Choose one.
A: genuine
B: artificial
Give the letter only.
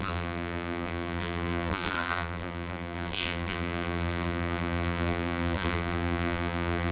B